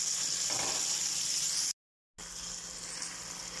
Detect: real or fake real